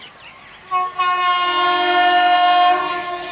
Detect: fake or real real